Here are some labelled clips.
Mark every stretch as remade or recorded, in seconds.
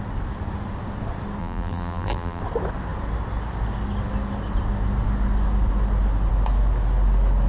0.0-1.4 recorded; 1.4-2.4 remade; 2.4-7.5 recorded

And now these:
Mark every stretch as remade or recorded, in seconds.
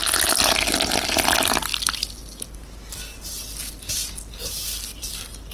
0.0-5.5 recorded